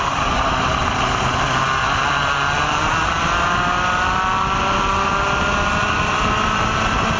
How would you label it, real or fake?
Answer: real